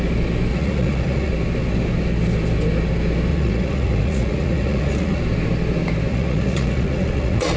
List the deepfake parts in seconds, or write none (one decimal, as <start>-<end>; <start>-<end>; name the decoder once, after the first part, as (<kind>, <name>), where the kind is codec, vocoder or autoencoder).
0.5-1.3 (vocoder, Vocos); 3.3-5.2; 6.1-7.6